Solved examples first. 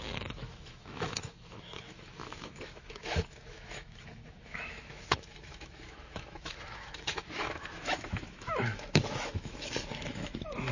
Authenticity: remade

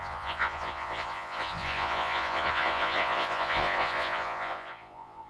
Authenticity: remade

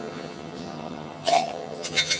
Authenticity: remade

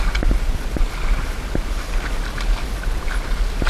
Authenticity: recorded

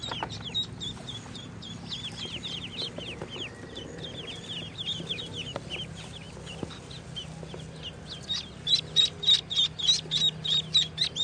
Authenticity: recorded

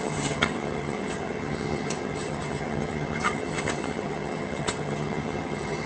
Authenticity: remade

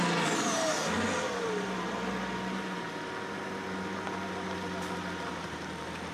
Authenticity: recorded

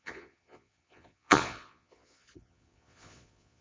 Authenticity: remade